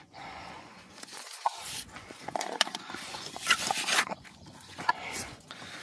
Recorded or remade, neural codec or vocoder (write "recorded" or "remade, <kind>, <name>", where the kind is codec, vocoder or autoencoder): remade, vocoder, Vocos